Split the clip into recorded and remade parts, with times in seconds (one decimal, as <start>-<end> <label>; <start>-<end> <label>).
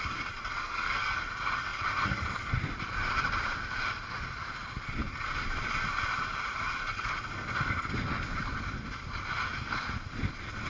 0.0-0.6 recorded; 0.6-1.2 remade; 1.2-10.7 recorded